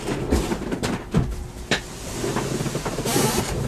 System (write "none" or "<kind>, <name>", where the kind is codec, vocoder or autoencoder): none